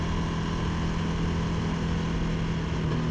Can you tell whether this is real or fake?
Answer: real